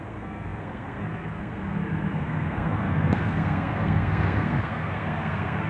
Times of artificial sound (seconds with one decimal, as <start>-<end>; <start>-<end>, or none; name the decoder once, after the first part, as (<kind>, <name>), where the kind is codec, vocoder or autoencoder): 0.0-5.7 (codec, SNAC)